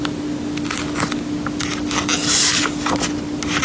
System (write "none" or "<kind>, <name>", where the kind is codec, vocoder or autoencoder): none